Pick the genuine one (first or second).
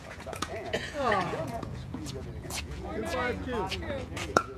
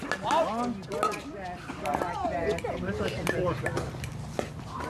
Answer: second